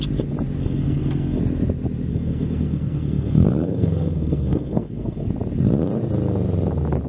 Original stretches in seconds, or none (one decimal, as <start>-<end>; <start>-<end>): 0.0-0.6; 1.4-2.1; 5.3-7.1